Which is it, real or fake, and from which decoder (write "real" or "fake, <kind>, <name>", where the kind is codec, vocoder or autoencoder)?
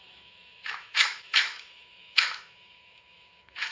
fake, autoencoder, DAC-VAE